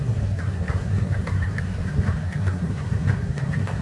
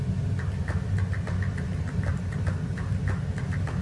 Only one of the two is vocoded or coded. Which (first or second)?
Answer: first